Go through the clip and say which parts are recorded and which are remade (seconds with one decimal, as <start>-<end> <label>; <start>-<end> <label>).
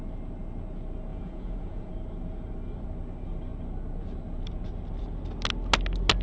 0.0-1.1 recorded; 1.1-1.9 remade; 1.9-6.2 recorded